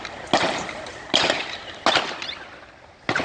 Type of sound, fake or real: real